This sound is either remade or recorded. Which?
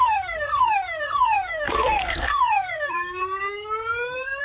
remade